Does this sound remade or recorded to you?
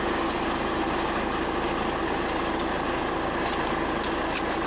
recorded